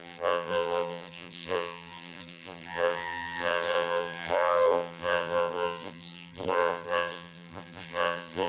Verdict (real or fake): fake